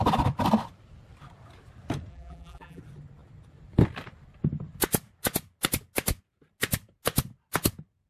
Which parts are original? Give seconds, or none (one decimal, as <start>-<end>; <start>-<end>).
0.0-2.1; 2.8-8.1